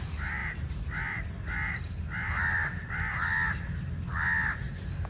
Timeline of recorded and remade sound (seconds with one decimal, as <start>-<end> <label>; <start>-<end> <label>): 0.0-0.4 recorded; 0.4-3.5 remade; 3.5-5.1 recorded